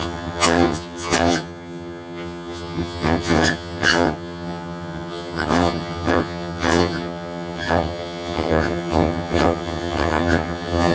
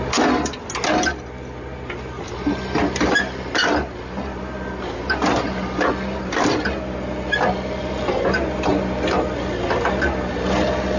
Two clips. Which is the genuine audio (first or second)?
second